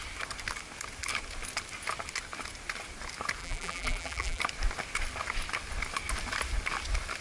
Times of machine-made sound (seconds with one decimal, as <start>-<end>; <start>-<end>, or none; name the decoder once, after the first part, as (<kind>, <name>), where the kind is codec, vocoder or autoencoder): 3.4-4.4 (vocoder, BigVGAN v2)